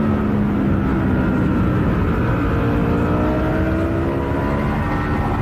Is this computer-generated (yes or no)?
no